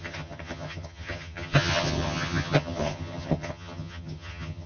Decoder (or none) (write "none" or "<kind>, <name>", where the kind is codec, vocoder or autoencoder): vocoder, HiFi-GAN